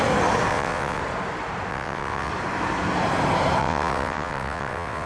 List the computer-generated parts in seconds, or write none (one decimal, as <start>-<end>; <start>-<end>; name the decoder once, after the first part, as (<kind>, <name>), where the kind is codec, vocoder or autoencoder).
0.5-1.0 (vocoder, WaveNeXt); 1.7-2.3; 3.6-5.1